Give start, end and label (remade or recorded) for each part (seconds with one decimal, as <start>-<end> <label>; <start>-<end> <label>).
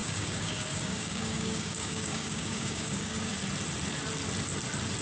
0.0-3.3 remade; 3.3-5.0 recorded